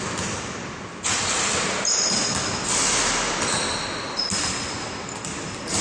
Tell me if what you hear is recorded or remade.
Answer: recorded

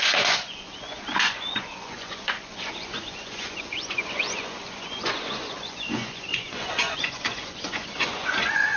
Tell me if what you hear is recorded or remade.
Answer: remade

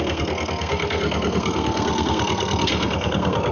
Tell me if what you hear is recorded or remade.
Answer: remade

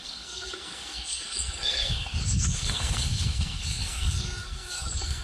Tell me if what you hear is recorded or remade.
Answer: remade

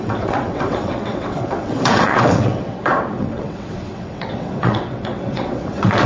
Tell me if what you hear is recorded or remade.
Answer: remade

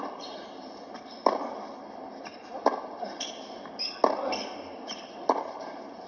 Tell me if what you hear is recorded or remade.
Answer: recorded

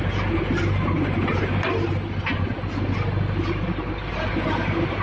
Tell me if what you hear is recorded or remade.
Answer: recorded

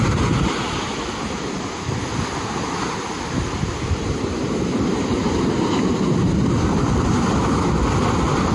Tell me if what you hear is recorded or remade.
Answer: recorded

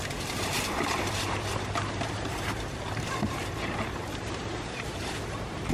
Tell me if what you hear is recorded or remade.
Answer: remade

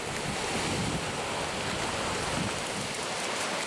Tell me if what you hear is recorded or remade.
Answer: recorded